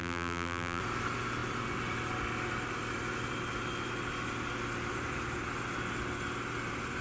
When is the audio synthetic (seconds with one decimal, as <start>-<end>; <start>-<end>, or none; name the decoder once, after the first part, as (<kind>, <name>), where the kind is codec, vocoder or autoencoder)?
0.0-0.8 (vocoder, BigVGAN v2)